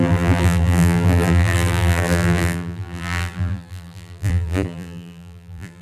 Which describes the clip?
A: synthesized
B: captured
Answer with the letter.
A